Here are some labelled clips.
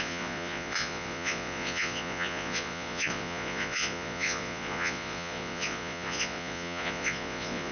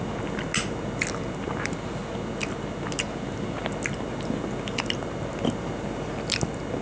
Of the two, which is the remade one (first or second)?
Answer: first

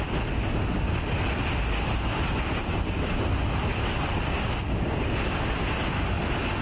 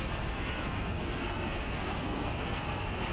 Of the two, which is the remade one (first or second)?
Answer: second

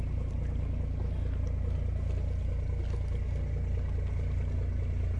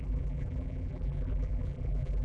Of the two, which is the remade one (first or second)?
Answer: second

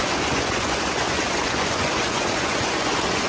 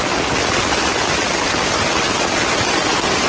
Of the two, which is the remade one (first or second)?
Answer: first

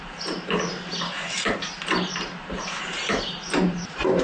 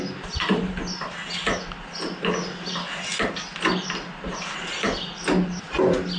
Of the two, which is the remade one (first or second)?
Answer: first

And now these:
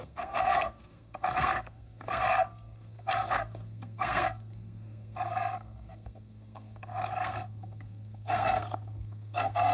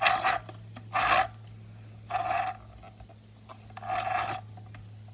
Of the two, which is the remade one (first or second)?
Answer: first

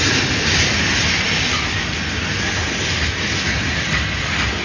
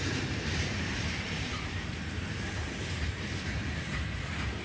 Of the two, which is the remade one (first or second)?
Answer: second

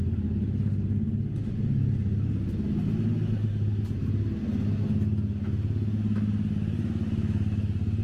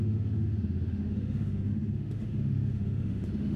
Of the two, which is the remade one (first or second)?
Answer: second